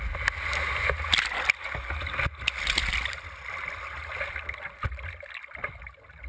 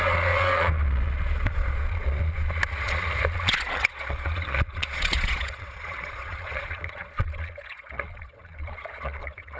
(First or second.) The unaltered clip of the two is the first